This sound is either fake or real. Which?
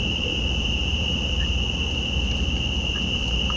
real